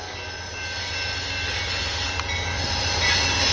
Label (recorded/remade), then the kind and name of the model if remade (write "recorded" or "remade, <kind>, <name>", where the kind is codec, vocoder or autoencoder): recorded